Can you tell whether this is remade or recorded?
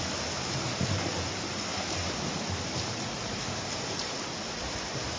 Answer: recorded